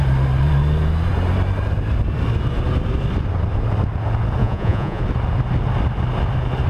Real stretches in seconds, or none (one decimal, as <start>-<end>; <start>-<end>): 0.0-4.4; 5.0-6.7